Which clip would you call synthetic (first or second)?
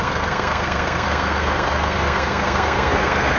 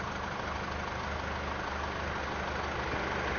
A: first